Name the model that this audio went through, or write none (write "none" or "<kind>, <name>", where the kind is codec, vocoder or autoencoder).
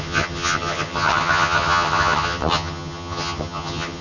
vocoder, HiFi-GAN